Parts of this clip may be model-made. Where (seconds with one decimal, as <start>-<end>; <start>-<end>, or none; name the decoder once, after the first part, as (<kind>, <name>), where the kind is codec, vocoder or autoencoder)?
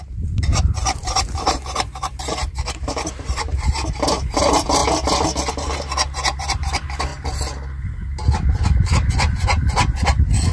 0.0-4.8 (vocoder, BigVGAN v2); 5.5-7.1; 9.1-9.6